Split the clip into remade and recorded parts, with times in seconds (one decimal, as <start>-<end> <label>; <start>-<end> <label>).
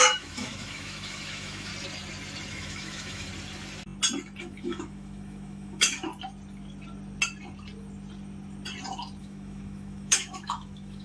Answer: 0.0-1.7 remade; 1.7-2.5 recorded; 2.5-3.3 remade; 3.3-4.4 recorded; 4.4-6.1 remade; 6.1-9.2 recorded; 9.2-11.0 remade